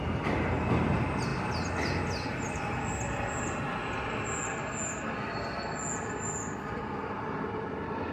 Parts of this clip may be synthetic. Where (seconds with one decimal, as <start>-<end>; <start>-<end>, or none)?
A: none